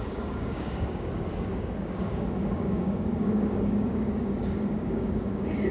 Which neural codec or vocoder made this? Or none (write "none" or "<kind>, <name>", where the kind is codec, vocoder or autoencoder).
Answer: codec, DAC